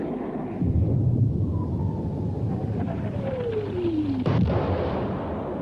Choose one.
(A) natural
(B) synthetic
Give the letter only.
A